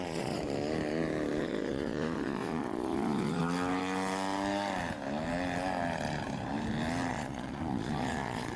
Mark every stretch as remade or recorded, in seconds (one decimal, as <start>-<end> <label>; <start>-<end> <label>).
0.0-0.4 remade; 0.4-1.4 recorded; 1.4-3.4 remade; 3.4-7.1 recorded; 7.1-8.6 remade